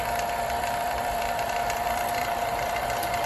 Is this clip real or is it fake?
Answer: fake